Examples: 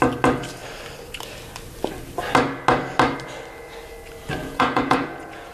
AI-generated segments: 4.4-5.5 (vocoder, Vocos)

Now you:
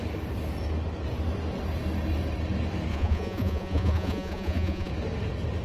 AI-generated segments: 2.9-4.9 (vocoder, Vocos)

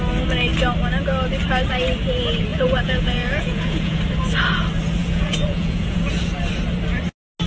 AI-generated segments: 2.5-4.0 (vocoder, Vocos); 5.0-6.1

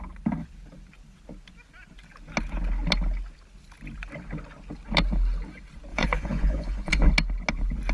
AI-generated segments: 5.9-7.1 (vocoder, Vocos)